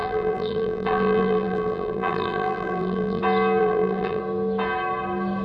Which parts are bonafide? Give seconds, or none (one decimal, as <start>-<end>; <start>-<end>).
3.2-3.6; 4.2-5.4